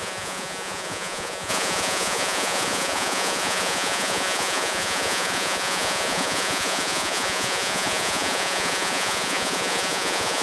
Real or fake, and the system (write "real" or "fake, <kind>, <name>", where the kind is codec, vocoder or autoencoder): fake, vocoder, Vocos